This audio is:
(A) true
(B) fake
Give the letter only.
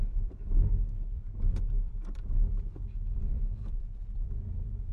B